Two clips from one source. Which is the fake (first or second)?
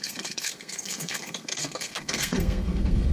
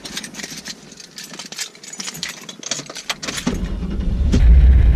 first